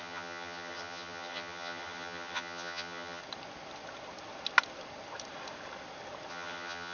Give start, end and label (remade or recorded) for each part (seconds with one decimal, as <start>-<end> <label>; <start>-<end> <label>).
0.0-3.2 remade; 3.2-6.3 recorded; 6.3-6.9 remade

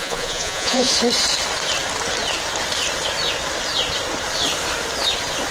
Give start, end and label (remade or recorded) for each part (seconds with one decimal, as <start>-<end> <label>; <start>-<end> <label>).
0.0-0.9 remade; 0.9-5.5 recorded

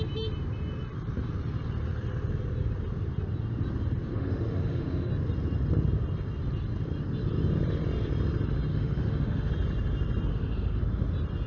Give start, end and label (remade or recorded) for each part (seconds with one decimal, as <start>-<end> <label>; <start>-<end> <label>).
0.0-4.1 recorded; 4.1-5.1 remade; 5.1-8.7 recorded; 8.7-9.5 remade; 9.5-10.3 recorded; 10.3-10.8 remade; 10.8-11.5 recorded

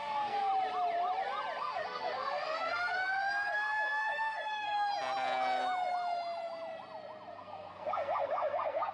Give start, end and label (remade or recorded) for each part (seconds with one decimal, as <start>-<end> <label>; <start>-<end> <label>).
0.0-0.5 remade; 0.5-1.6 recorded; 1.6-4.9 remade; 4.9-7.3 recorded; 7.3-8.9 remade